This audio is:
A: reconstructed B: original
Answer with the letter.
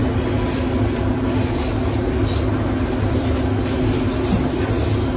B